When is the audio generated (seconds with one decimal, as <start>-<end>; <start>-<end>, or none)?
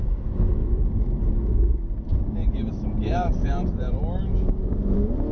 0.6-1.3; 2.1-4.0